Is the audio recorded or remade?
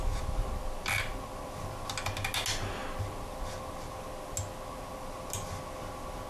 recorded